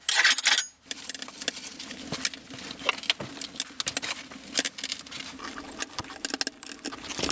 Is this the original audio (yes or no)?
yes